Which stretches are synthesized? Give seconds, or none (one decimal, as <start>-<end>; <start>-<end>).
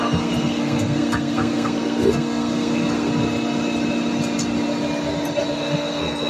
0.0-3.1; 5.5-6.3